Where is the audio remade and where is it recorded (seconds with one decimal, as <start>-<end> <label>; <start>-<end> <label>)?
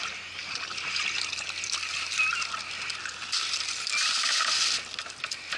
0.0-5.6 recorded